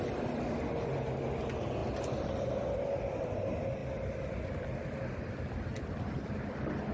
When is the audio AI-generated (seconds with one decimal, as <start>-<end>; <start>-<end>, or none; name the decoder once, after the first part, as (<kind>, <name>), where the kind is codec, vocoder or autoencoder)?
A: 5.7-6.9 (vocoder, BigVGAN v2)